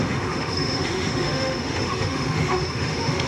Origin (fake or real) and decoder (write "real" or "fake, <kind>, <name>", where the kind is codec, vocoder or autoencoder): fake, autoencoder, DAC-VAE